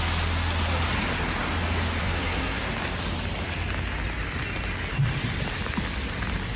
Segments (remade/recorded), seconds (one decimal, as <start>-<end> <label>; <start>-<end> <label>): 0.0-2.0 recorded; 2.0-2.6 remade; 2.6-6.6 recorded